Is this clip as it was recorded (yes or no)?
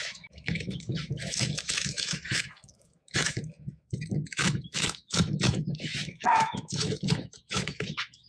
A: no